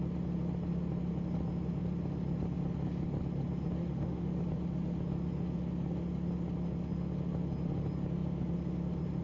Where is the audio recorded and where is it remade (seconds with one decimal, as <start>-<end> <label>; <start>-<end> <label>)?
0.0-3.8 recorded; 3.8-4.3 remade; 4.3-9.2 recorded